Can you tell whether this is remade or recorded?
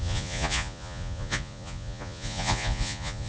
remade